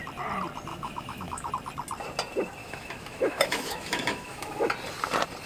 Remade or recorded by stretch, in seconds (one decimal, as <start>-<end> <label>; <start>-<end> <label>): 0.0-0.7 recorded; 0.7-1.5 remade; 1.5-2.6 recorded; 2.6-4.7 remade; 4.7-5.5 recorded